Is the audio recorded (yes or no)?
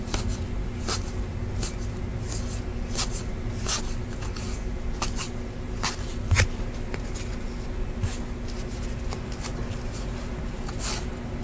yes